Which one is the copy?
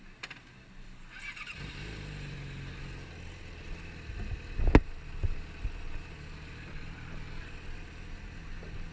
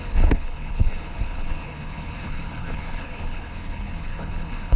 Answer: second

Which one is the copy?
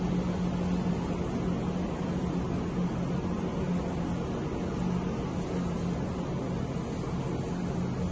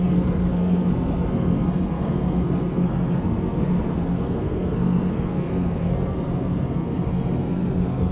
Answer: second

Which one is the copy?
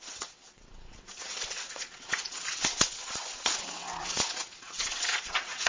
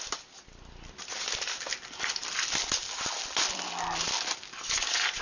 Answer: first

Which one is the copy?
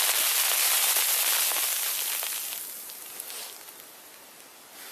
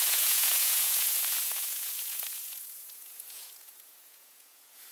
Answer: second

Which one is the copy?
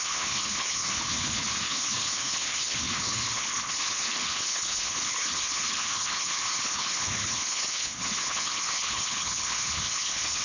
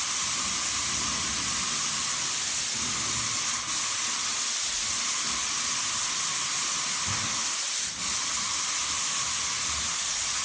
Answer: first